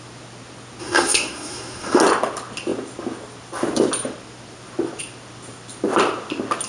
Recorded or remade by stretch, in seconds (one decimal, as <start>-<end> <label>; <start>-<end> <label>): 0.0-0.8 recorded; 0.8-2.0 remade; 2.0-6.7 recorded